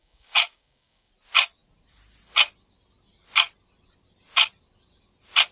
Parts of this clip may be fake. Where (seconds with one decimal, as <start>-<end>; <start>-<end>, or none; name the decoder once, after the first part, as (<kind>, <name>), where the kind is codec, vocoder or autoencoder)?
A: 0.0-1.1 (codec, DAC)